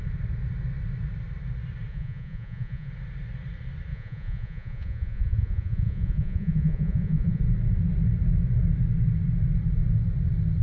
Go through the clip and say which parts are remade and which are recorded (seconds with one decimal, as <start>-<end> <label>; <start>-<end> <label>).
0.0-1.9 recorded; 1.9-2.9 remade; 2.9-3.9 recorded; 3.9-7.4 remade; 7.4-10.6 recorded